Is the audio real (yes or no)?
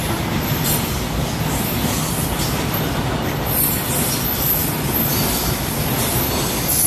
yes